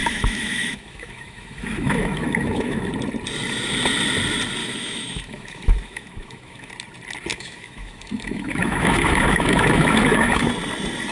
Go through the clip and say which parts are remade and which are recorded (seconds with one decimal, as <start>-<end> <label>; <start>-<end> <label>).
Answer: 0.0-2.9 remade; 2.9-4.6 recorded; 4.6-6.7 remade; 6.7-7.3 recorded; 7.3-10.5 remade; 10.5-11.1 recorded